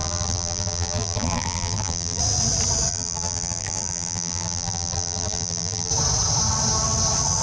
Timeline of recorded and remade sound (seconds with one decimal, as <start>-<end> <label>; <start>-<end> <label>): 0.0-2.2 remade; 2.2-2.9 recorded; 2.9-5.9 remade; 5.9-7.4 recorded